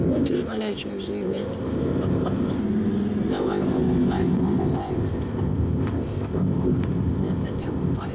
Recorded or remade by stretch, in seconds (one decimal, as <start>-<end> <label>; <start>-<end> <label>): 0.0-2.6 remade; 2.6-3.3 recorded; 3.3-8.1 remade